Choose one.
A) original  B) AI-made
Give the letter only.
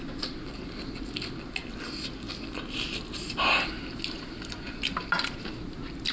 A